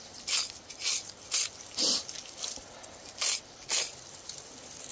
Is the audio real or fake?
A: real